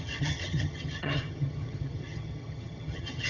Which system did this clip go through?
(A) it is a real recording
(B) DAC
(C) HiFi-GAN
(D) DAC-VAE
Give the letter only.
C